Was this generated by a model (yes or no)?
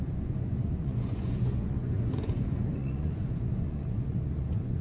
yes